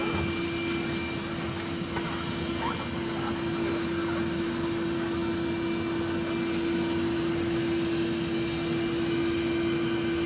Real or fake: real